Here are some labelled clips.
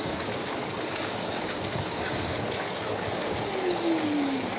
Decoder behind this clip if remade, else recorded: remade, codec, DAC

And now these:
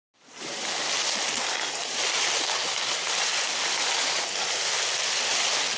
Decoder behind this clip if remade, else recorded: recorded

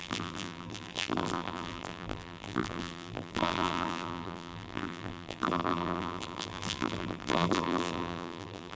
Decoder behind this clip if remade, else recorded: remade, vocoder, BigVGAN v2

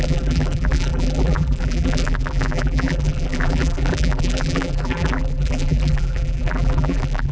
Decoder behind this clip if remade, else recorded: remade, vocoder, BigVGAN v2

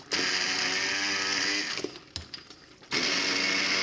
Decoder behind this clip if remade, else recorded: recorded